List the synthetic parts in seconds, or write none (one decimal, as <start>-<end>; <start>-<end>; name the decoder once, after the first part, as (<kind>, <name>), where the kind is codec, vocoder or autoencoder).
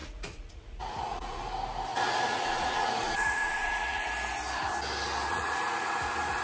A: 0.0-1.4 (vocoder, Vocos); 1.9-4.1; 5.3-5.9